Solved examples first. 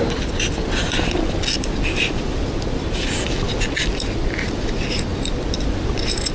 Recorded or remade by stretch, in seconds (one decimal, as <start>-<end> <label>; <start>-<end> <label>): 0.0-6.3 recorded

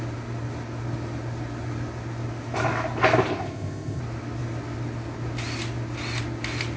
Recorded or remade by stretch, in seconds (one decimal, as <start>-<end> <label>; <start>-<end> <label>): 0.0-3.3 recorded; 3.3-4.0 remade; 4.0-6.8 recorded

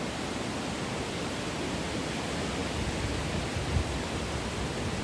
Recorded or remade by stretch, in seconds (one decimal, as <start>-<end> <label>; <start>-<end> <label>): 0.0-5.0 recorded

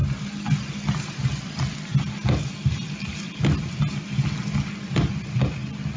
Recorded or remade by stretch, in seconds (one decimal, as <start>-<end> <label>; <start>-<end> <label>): 0.0-6.0 recorded